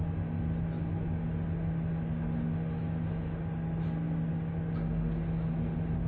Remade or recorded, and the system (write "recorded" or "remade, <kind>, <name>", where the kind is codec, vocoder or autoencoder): recorded